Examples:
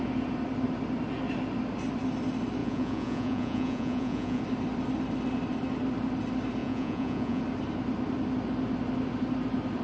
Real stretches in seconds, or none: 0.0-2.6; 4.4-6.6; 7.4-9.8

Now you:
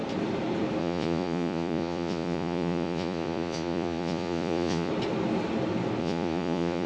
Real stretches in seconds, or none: 0.0-0.8; 4.9-6.0

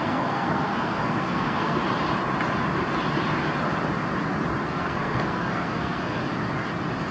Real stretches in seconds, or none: 1.8-4.6; 6.2-7.1

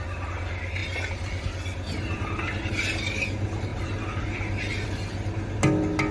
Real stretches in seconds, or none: 0.0-6.1

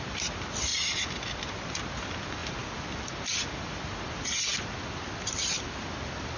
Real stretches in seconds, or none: 0.0-6.4